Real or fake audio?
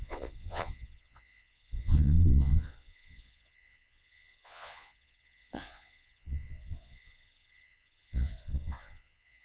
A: fake